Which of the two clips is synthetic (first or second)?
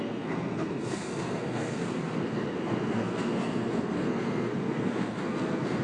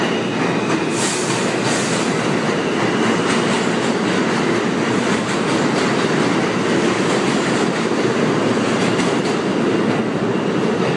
first